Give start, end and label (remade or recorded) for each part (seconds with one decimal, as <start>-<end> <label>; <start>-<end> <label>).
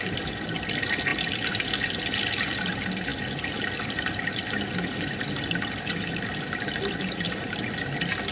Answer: 0.0-8.3 recorded